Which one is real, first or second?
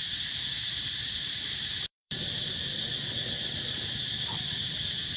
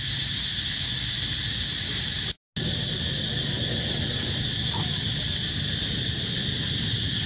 second